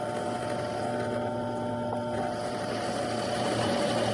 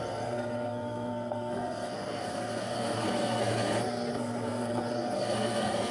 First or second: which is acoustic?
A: first